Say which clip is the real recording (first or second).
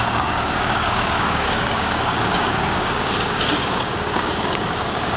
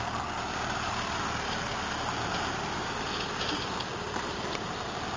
second